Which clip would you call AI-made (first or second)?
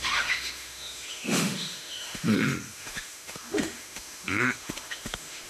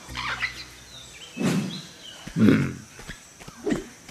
first